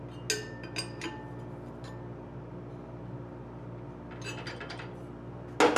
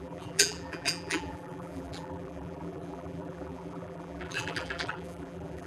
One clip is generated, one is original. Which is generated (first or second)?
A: second